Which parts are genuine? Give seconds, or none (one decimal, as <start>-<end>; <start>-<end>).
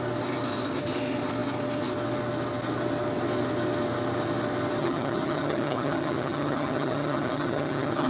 0.0-4.8